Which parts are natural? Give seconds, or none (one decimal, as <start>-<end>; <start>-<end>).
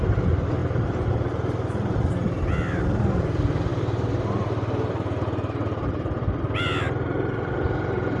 0.0-0.6; 1.3-3.7